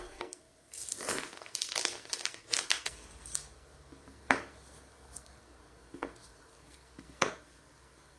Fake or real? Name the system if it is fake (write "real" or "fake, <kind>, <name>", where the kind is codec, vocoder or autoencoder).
fake, codec, SNAC